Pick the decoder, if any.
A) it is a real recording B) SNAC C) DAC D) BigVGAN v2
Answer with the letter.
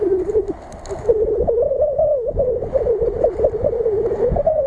D